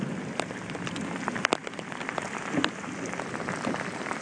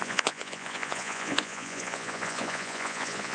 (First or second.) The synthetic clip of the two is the second